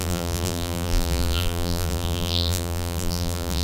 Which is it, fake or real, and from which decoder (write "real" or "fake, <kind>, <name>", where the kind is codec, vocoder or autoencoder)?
fake, vocoder, BigVGAN v2